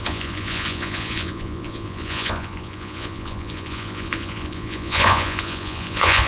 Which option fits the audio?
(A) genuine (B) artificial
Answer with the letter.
B